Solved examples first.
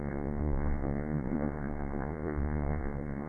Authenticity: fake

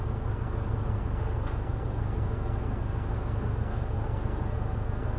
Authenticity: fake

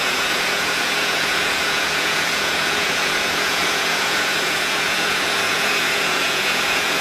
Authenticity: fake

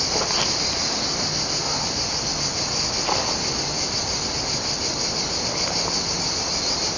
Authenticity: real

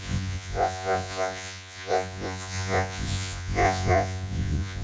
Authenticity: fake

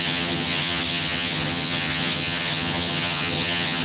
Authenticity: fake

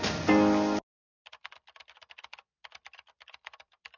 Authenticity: real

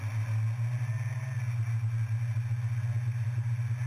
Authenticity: real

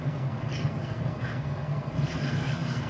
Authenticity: fake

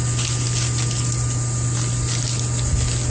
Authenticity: real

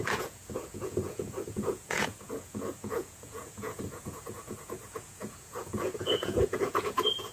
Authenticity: fake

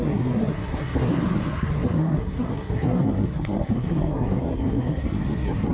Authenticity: fake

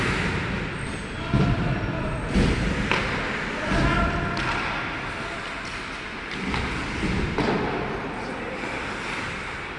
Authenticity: real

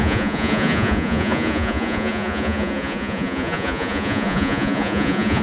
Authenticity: fake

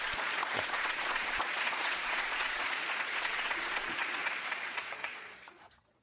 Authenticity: fake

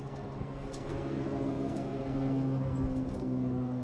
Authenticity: fake